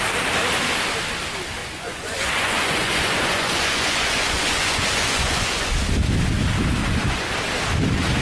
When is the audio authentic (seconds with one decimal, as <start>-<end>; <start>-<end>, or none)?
0.0-1.6; 5.7-6.8; 7.3-8.2